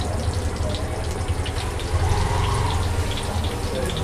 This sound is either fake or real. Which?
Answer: real